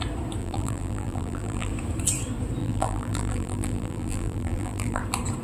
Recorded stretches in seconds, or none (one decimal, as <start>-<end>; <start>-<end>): 0.0-0.4; 1.7-2.6; 5.0-5.4